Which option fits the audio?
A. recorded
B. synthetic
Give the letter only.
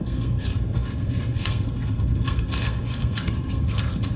B